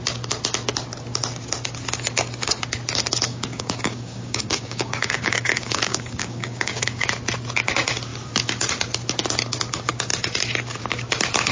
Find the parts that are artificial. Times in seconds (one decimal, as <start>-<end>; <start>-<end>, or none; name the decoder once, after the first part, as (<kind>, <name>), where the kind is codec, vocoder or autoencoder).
3.3-7.1 (codec, DAC)